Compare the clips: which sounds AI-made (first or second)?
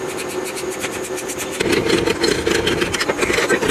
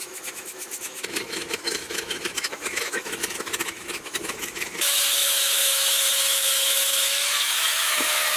second